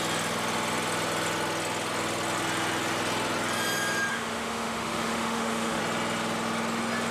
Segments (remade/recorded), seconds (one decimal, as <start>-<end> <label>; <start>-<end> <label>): 0.0-4.1 recorded; 4.1-5.8 remade; 5.8-7.1 recorded